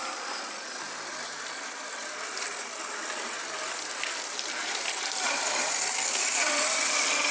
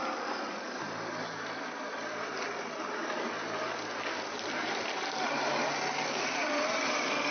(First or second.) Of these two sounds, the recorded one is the second